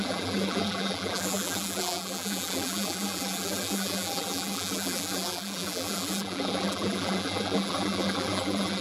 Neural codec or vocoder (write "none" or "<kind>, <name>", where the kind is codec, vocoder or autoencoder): vocoder, BigVGAN v2